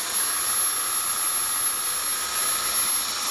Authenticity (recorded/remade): recorded